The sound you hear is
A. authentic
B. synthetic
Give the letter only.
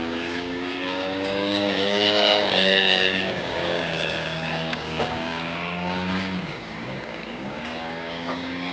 B